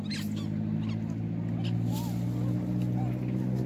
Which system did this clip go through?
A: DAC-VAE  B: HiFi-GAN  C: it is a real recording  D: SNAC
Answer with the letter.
C